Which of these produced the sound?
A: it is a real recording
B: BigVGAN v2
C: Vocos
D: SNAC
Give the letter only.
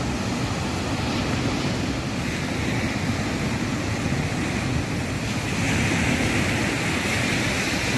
A